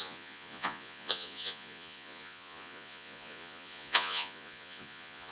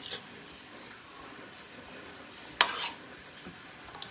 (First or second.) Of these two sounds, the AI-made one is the first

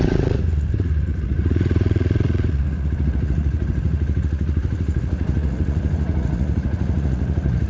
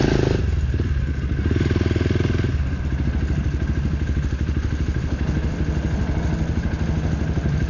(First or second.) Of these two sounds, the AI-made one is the first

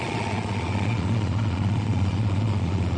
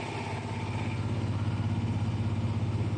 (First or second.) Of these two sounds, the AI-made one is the first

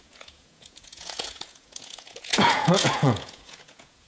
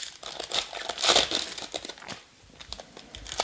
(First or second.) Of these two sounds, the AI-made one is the first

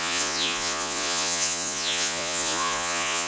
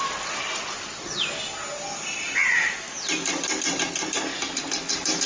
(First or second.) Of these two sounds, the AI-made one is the first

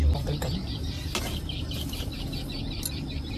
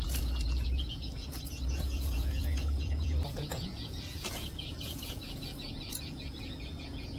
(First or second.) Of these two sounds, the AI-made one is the second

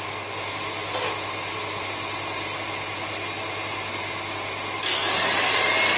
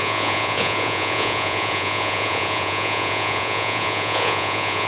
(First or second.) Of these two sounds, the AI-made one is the second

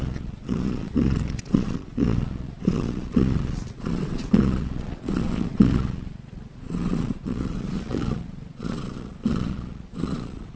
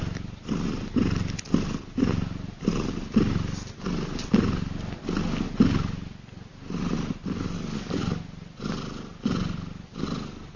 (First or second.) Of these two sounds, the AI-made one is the first